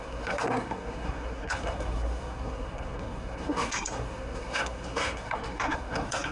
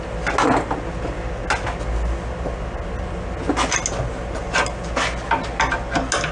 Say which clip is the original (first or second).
second